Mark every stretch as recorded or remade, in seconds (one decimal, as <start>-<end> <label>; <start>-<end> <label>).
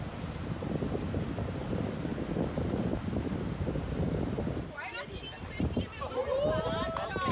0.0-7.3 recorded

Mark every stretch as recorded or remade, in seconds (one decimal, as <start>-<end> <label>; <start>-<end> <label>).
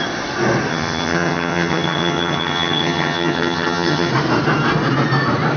0.0-0.7 recorded; 0.7-4.1 remade; 4.1-5.6 recorded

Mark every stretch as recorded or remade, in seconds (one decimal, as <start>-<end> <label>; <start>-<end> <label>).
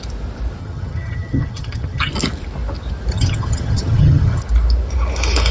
0.0-0.6 recorded; 0.6-2.1 remade; 2.1-3.1 recorded; 3.1-4.4 remade; 4.4-5.5 recorded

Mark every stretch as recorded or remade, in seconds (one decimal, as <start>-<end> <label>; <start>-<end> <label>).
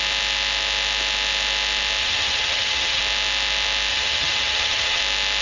0.0-2.0 recorded; 2.0-3.0 remade; 3.0-3.9 recorded; 3.9-5.0 remade; 5.0-5.4 recorded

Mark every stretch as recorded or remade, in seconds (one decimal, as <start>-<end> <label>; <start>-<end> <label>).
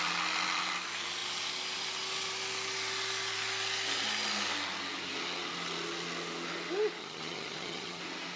0.0-7.0 recorded; 7.0-8.0 remade; 8.0-8.4 recorded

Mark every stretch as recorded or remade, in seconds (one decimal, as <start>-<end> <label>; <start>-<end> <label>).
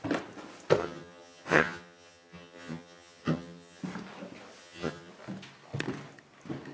0.0-0.8 recorded; 0.8-3.8 remade; 3.8-4.6 recorded; 4.6-5.1 remade; 5.1-6.7 recorded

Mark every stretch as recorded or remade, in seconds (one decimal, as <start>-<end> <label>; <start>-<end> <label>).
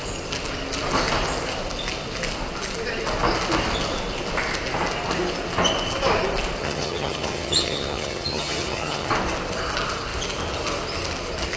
0.0-6.6 recorded; 6.6-9.1 remade; 9.1-11.6 recorded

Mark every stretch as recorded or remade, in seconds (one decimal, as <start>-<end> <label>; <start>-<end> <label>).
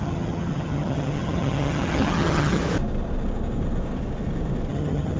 0.0-2.6 remade; 2.6-4.7 recorded; 4.7-5.2 remade